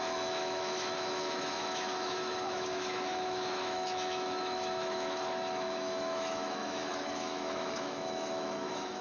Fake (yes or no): yes